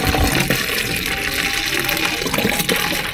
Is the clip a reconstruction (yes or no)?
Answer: no